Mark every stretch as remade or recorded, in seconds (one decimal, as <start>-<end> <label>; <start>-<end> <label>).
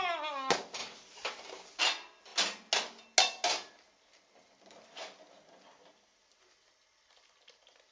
0.0-7.9 recorded